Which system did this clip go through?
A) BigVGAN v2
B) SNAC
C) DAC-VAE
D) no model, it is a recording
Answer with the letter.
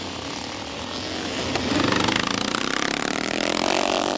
D